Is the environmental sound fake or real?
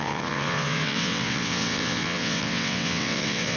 fake